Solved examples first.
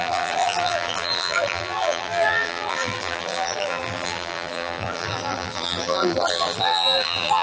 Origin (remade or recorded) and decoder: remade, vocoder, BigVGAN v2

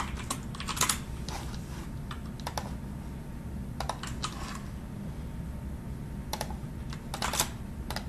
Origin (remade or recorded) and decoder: recorded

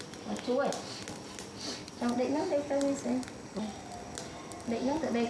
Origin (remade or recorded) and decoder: recorded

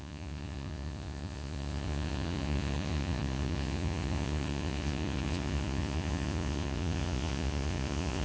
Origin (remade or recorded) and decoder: remade, vocoder, Vocos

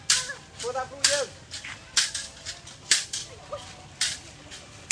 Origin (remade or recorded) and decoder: recorded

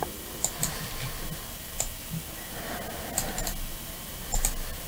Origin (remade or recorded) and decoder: recorded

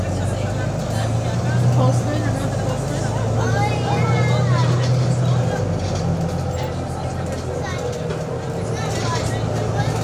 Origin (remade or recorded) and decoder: recorded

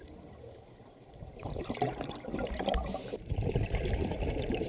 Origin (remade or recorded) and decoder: remade, vocoder, BigVGAN v2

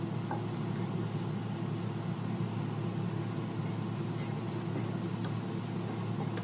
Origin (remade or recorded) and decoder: recorded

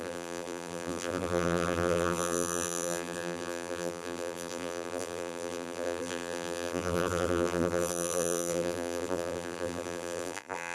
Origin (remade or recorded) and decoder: remade, vocoder, BigVGAN v2